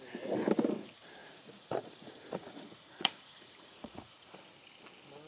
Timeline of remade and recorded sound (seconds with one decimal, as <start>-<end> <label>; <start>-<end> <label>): 0.0-1.2 recorded; 1.2-4.4 remade; 4.4-5.3 recorded